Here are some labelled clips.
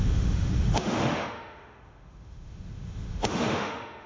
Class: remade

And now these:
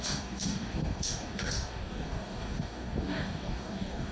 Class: remade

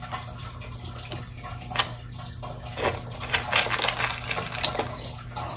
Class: recorded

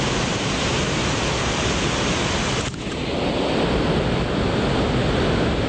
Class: recorded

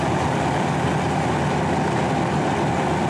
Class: recorded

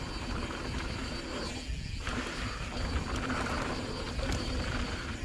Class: recorded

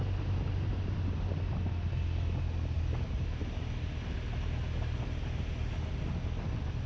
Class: recorded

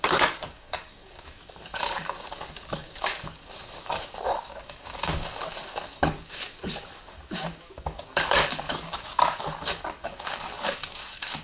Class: remade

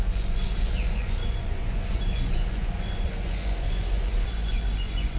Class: remade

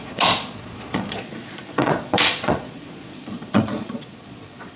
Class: remade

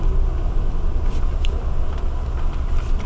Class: recorded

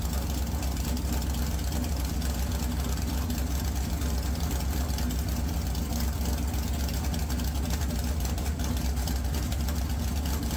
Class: recorded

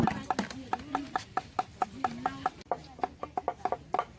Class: recorded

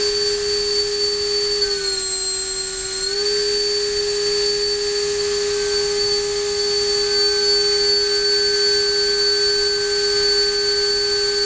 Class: recorded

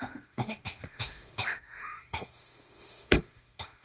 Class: remade